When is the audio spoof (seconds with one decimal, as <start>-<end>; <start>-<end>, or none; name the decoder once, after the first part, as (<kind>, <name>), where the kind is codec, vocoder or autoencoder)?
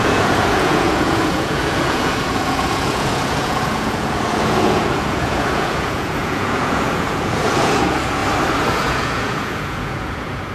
0.0-8.2 (vocoder, Vocos); 8.7-10.5